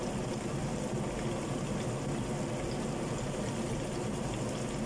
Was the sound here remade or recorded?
recorded